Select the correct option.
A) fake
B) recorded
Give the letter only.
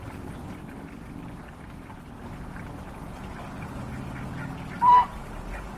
B